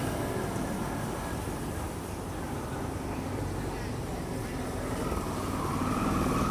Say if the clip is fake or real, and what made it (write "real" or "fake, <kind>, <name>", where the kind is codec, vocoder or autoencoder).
real